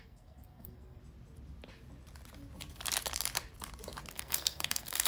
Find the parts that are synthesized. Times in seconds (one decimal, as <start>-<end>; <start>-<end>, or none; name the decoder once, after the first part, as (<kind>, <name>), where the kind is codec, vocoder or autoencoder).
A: 0.0-1.0 (codec, SNAC); 4.1-5.1